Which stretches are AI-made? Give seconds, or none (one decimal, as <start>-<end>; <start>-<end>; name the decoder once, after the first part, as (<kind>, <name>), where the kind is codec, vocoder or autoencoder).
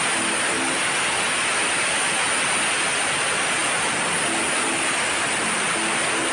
none